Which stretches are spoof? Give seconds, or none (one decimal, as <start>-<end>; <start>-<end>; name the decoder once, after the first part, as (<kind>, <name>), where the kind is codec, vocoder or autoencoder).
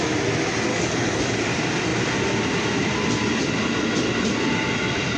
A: 0.7-1.4 (codec, DAC)